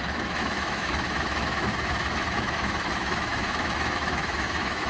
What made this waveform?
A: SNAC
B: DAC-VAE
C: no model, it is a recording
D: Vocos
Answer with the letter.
B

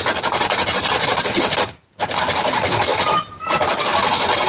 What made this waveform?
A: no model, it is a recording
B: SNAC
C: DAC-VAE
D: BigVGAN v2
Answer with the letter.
A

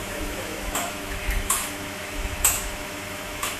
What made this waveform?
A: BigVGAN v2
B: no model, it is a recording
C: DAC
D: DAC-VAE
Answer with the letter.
D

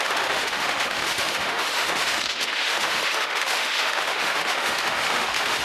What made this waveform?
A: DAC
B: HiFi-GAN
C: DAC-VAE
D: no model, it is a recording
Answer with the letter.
C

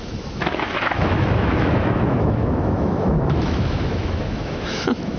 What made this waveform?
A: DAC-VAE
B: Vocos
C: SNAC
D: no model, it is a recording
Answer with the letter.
A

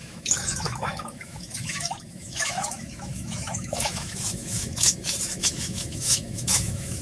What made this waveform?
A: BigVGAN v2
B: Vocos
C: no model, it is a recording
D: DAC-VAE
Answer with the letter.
D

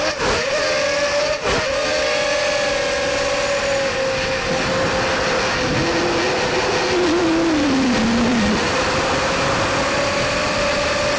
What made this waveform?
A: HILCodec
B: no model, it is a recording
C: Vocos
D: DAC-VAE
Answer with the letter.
B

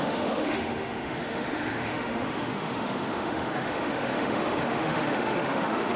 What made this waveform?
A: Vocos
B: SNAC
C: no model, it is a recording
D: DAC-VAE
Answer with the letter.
D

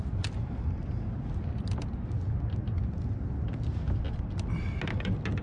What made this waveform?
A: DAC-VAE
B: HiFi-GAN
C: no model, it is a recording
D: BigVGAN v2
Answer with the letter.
C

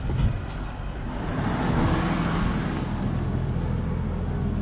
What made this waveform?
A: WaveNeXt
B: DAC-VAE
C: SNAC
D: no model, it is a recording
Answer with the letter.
D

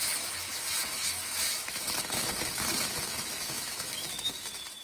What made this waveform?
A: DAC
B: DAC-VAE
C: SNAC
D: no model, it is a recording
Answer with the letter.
B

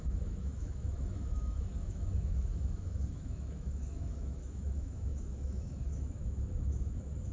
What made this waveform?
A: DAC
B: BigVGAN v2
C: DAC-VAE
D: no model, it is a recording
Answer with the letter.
C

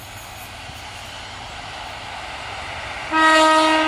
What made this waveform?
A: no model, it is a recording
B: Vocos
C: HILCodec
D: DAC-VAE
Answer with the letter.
A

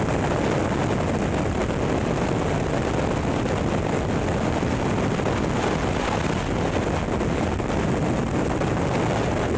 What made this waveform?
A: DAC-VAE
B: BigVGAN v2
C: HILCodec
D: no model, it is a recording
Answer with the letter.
D